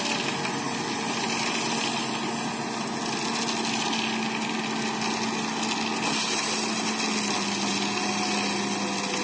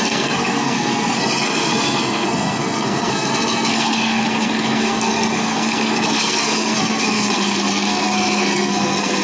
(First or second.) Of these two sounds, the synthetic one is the second